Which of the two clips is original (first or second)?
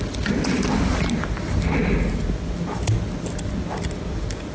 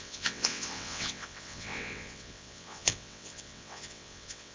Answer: first